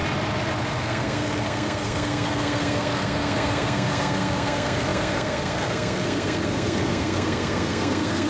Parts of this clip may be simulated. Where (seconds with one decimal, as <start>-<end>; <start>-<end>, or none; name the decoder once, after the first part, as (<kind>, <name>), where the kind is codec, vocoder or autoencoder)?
0.8-8.3 (codec, SNAC)